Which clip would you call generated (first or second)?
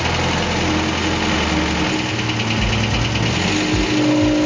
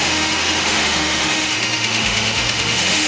second